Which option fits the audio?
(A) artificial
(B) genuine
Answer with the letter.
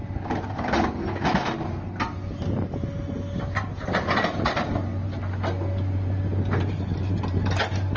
B